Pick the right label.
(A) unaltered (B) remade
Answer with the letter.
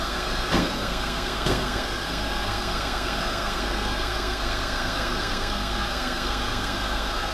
B